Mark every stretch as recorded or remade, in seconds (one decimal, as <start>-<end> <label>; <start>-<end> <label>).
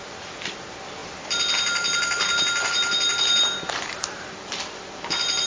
0.0-1.0 recorded; 1.0-4.3 remade; 4.3-5.5 recorded